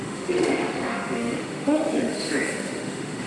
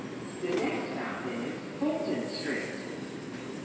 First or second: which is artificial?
first